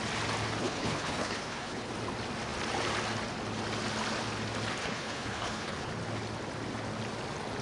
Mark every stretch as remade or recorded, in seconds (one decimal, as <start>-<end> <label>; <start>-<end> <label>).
0.0-0.6 recorded; 0.6-1.9 remade; 1.9-4.8 recorded; 4.8-5.9 remade; 5.9-7.6 recorded